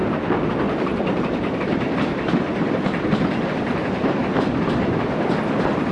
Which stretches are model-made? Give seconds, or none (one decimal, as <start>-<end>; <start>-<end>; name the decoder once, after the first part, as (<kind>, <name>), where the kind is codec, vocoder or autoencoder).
none